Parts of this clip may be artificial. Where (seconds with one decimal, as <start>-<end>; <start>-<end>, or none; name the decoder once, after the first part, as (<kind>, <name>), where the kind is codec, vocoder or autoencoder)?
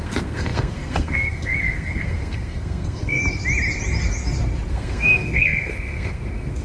0.0-3.2 (codec, SNAC); 4.7-6.6